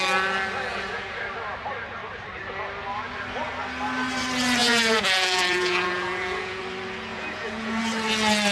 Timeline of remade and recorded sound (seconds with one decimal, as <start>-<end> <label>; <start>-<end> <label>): 0.0-0.7 recorded; 0.7-1.2 remade; 1.2-4.6 recorded; 4.6-6.6 remade; 6.6-7.1 recorded; 7.1-7.8 remade; 7.8-8.5 recorded